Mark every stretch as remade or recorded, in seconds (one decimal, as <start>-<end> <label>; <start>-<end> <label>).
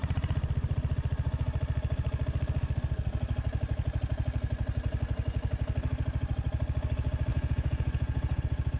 0.0-7.3 recorded; 7.3-8.4 remade; 8.4-8.8 recorded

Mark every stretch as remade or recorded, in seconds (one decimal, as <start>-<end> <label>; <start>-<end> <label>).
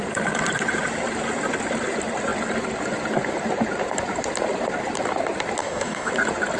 0.0-5.6 recorded; 5.6-6.1 remade; 6.1-6.6 recorded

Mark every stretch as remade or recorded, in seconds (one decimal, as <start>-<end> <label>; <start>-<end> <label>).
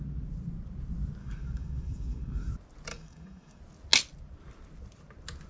0.0-1.2 recorded; 1.2-2.5 remade; 2.5-2.9 recorded; 2.9-3.6 remade; 3.6-5.5 recorded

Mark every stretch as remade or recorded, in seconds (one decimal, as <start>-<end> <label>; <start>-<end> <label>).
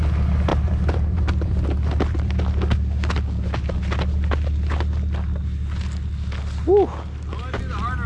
0.0-0.5 recorded; 0.5-2.4 remade; 2.4-8.1 recorded